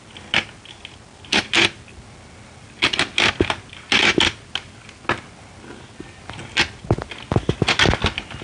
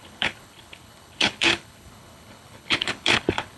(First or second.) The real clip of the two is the first